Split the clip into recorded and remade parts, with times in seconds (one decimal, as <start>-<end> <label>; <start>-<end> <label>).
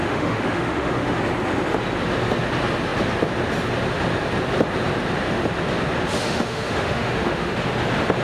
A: 0.0-1.2 remade; 1.2-6.1 recorded; 6.1-7.5 remade; 7.5-8.2 recorded